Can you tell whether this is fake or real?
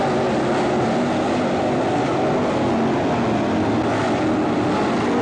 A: real